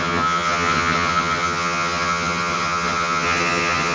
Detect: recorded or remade remade